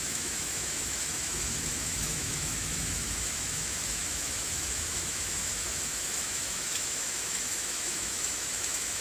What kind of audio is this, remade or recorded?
remade